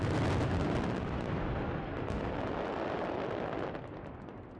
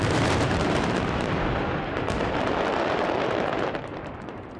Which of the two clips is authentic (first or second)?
first